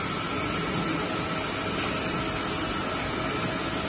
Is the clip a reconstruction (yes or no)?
no